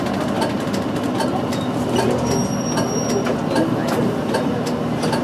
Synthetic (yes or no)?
no